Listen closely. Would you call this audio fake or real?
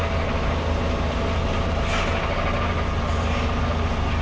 real